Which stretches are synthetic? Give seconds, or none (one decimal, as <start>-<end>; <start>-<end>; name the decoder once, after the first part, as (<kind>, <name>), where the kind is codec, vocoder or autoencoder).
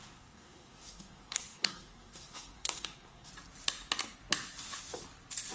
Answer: 0.0-3.3 (codec, SNAC)